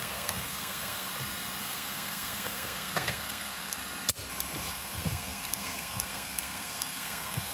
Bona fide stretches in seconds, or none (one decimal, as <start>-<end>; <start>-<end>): 1.1-1.6; 3.8-4.7